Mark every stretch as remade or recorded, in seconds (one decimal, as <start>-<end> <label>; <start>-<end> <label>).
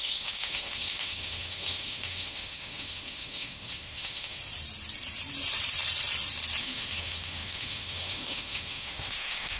0.0-4.4 remade; 4.4-6.6 recorded; 6.6-9.6 remade